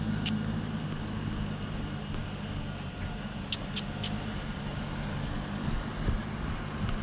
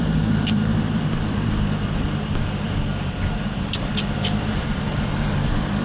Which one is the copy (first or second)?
second